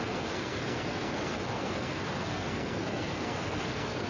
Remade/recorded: remade